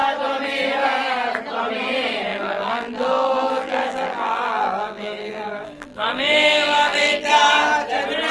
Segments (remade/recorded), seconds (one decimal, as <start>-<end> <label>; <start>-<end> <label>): 0.0-2.3 recorded; 2.3-7.3 remade; 7.3-8.3 recorded